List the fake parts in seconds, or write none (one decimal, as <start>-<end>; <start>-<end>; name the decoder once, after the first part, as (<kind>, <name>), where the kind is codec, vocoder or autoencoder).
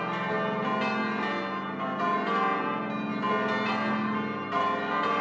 none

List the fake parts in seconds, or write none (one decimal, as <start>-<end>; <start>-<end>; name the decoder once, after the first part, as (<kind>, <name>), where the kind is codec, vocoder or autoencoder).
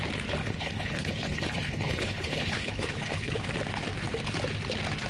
0.4-3.5 (codec, HILCodec)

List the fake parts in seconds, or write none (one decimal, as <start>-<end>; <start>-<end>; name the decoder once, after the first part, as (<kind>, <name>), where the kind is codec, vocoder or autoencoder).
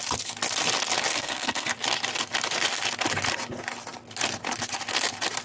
1.1-1.7 (codec, SNAC)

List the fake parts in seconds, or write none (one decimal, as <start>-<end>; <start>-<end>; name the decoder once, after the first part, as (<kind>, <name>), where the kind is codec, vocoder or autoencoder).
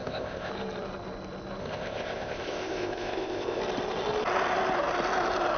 0.0-0.5 (codec, ZipCodec); 1.6-3.6